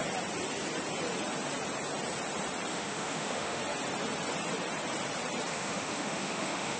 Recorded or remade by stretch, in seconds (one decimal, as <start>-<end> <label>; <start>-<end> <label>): 0.0-2.7 recorded; 2.7-3.6 remade; 3.6-5.5 recorded; 5.5-6.8 remade

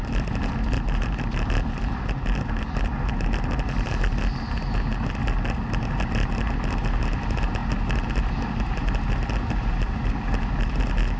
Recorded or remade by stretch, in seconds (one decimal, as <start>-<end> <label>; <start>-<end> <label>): 0.0-11.2 recorded

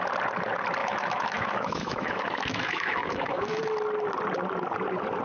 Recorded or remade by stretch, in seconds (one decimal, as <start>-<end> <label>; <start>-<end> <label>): 0.0-0.8 recorded; 0.8-3.6 remade; 3.6-5.2 recorded

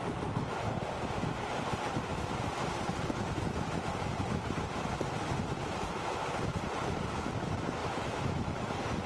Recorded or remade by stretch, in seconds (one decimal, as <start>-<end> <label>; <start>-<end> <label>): 0.0-7.8 recorded; 7.8-8.5 remade; 8.5-9.1 recorded

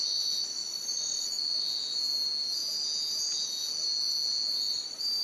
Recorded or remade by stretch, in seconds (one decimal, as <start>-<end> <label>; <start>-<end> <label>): 0.0-5.2 recorded

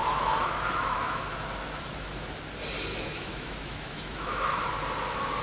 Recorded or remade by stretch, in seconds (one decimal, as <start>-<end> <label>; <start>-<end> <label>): 0.0-1.3 remade; 1.3-2.9 recorded; 2.9-4.6 remade; 4.6-5.4 recorded

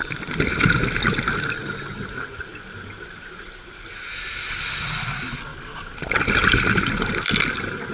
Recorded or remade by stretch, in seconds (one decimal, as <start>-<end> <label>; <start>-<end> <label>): 0.0-7.9 recorded

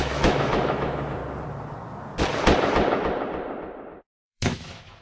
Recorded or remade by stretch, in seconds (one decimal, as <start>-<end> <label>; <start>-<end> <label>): 0.0-1.2 remade; 1.2-4.1 recorded; 4.1-5.0 remade